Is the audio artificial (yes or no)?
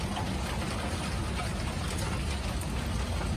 no